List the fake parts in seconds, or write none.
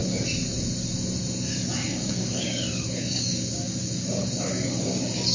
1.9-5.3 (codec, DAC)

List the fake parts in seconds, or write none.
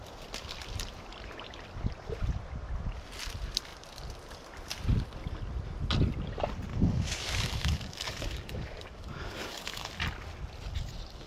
6.7-9.9 (codec, DAC)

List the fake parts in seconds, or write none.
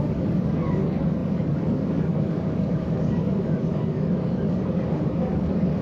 0.0-5.8 (codec, DAC)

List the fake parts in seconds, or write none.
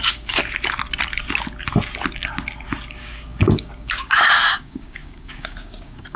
0.0-0.4 (codec, DAC); 2.9-6.2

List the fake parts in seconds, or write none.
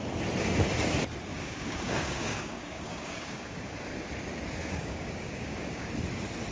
1.3-3.7 (codec, DAC); 4.6-5.9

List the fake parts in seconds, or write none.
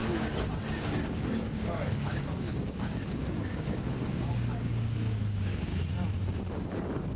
0.0-5.7 (codec, DAC)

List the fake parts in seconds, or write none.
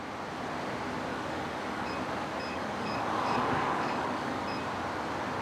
1.1-1.9 (codec, DAC); 2.5-4.4